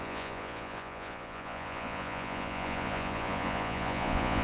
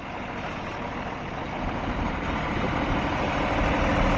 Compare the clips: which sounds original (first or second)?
second